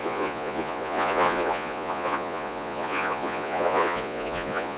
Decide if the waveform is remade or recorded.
remade